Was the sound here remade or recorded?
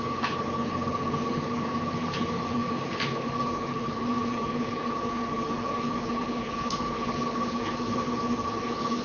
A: remade